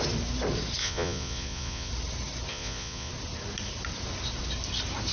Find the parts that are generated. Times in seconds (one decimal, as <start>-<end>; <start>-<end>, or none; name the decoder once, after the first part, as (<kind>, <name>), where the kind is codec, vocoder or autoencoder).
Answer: 0.8-1.9 (vocoder, Vocos); 2.5-3.1